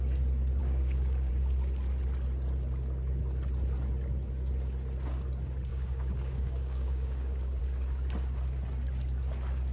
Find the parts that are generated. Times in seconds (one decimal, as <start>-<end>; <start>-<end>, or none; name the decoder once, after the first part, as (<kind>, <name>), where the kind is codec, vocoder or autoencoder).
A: 0.6-1.3 (codec, DAC); 5.7-7.6

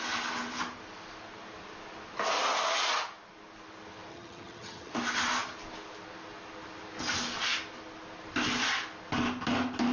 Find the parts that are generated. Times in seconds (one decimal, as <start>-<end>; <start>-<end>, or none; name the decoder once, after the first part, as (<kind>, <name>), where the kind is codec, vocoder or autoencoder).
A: 4.1-4.9 (vocoder, HiFi-GAN)

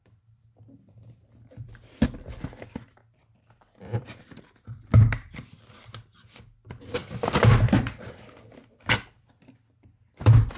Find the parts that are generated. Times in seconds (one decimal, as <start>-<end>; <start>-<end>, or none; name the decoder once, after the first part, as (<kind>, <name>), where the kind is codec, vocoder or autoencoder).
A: none

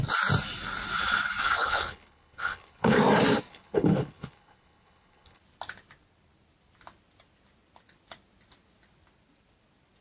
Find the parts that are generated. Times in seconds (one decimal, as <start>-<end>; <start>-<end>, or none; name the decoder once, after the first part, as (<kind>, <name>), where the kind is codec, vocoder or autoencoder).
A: 1.4-3.0 (codec, HILCodec); 3.5-5.4

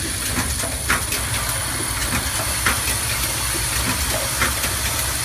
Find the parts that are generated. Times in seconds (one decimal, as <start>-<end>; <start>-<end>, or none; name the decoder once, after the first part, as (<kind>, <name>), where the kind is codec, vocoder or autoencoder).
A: 1.0-1.6 (vocoder, BigVGAN v2)

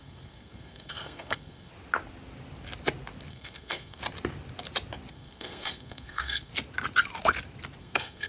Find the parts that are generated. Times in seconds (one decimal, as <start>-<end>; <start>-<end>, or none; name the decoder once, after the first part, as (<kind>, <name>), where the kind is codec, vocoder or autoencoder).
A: 0.0-1.7 (codec, SNAC); 3.3-4.0; 5.1-6.5; 7.8-8.3

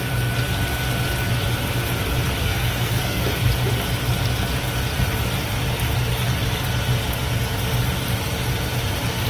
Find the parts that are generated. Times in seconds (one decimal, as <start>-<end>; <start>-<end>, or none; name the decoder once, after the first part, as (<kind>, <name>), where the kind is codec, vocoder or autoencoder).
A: 2.4-3.2 (codec, SNAC)